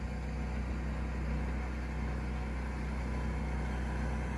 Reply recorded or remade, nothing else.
recorded